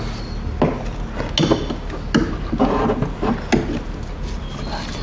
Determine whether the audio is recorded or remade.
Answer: recorded